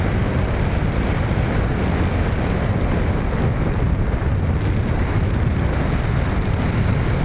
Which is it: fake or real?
real